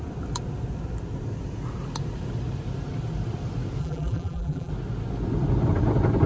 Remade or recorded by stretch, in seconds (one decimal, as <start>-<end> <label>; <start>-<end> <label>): 0.0-3.8 recorded; 3.8-4.7 remade; 4.7-6.3 recorded